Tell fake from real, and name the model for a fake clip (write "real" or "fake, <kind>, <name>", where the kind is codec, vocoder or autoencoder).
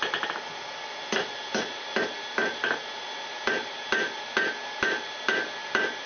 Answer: real